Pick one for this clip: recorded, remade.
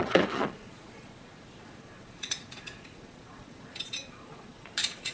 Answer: remade